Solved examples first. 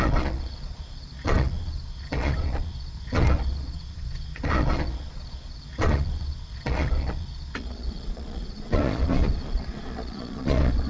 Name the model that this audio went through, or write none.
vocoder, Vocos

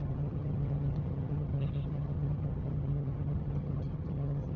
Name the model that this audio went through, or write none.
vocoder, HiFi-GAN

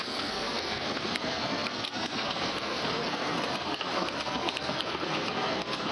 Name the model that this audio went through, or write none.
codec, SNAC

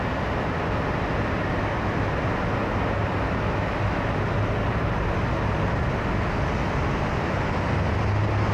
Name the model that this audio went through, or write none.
none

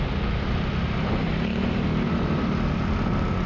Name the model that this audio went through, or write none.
none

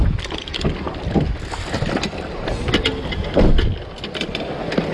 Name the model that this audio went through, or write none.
none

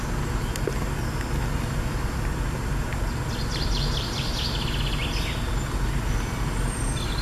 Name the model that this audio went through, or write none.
none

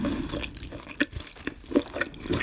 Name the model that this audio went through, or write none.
none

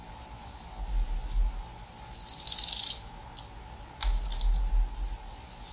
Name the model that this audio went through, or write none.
none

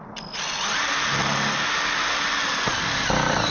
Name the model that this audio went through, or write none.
none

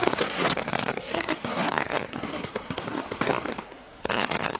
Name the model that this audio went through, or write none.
codec, SNAC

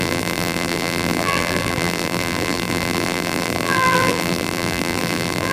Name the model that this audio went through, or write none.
vocoder, BigVGAN v2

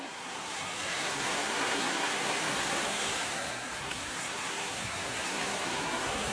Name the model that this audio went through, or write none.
codec, SNAC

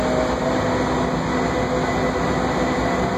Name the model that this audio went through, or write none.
none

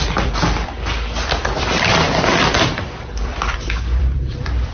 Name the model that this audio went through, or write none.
vocoder, BigVGAN v2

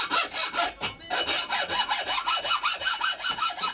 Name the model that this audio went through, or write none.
none